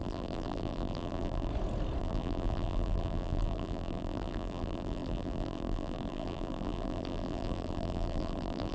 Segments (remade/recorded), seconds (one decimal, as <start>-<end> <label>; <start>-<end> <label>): 0.0-1.5 remade; 1.5-2.0 recorded; 2.0-8.7 remade